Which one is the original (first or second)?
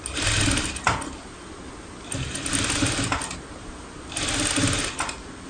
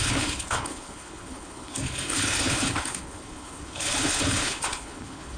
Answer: first